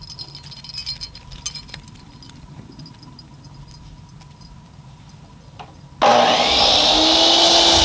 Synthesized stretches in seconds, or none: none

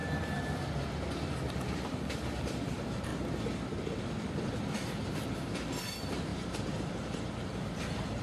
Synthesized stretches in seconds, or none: 2.4-3.1; 4.4-8.2